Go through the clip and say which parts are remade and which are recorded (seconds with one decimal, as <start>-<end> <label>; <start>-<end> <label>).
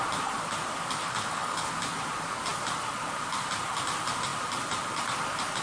0.0-1.0 recorded; 1.0-1.7 remade; 1.7-5.6 recorded